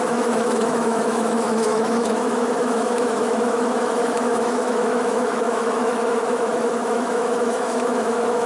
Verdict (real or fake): fake